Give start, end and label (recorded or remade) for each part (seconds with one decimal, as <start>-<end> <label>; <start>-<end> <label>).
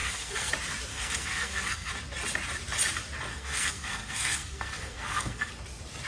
0.0-0.5 remade; 0.5-0.9 recorded; 0.9-1.9 remade; 1.9-3.3 recorded; 3.3-5.5 remade; 5.5-6.1 recorded